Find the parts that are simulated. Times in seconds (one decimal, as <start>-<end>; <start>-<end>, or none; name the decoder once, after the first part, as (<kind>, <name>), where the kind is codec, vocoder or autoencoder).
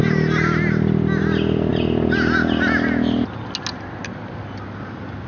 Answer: none